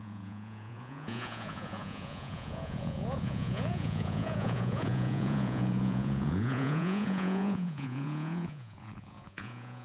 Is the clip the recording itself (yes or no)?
no